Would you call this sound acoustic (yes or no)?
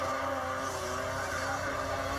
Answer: yes